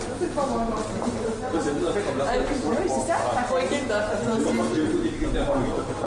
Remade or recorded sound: recorded